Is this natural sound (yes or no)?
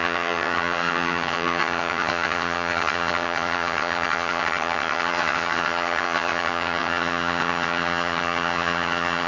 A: no